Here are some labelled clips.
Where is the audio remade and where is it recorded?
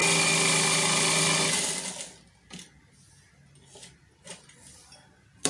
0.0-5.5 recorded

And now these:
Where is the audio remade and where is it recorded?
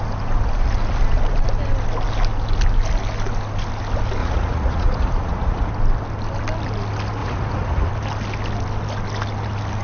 0.0-4.2 recorded; 4.2-5.7 remade; 5.7-7.2 recorded; 7.2-7.9 remade; 7.9-9.8 recorded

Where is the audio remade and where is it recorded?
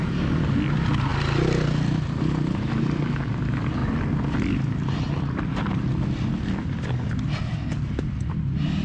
0.0-8.8 recorded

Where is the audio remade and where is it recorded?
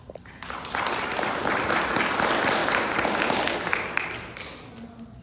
0.0-5.2 recorded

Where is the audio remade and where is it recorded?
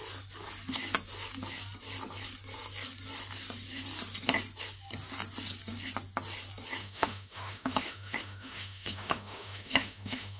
0.0-6.8 recorded; 6.8-10.4 remade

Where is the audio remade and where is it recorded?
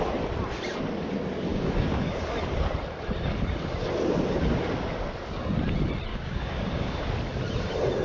0.0-1.5 recorded; 1.5-2.2 remade; 2.2-6.1 recorded; 6.1-7.1 remade; 7.1-8.0 recorded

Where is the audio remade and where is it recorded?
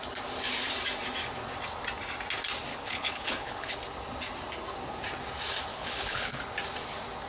0.0-2.7 recorded; 2.7-3.8 remade; 3.8-5.7 recorded; 5.7-6.4 remade; 6.4-7.3 recorded